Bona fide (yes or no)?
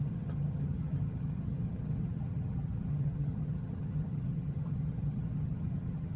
no